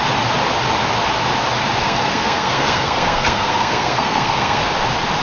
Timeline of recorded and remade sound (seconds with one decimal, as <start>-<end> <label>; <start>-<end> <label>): 0.0-1.8 recorded; 1.8-4.6 remade; 4.6-5.2 recorded

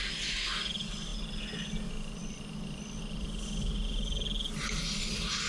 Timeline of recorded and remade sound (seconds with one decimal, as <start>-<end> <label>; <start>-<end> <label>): 0.0-5.5 recorded

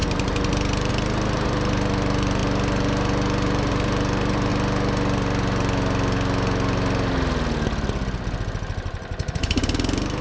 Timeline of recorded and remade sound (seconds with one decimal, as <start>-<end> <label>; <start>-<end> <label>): 0.0-2.4 remade; 2.4-3.7 recorded; 3.7-4.5 remade; 4.5-9.3 recorded; 9.3-10.2 remade

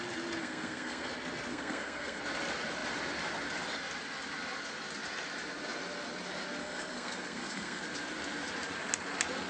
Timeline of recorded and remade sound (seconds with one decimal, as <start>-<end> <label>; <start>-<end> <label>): 0.0-0.4 recorded; 0.4-1.1 remade; 1.1-1.5 recorded; 1.5-2.2 remade; 2.2-6.6 recorded; 6.6-7.8 remade; 7.8-9.5 recorded